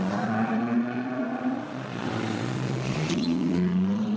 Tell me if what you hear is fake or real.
fake